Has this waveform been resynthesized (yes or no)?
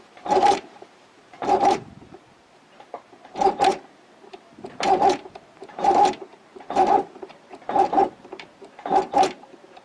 yes